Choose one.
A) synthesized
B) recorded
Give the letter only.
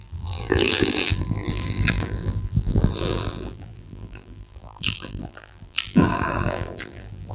A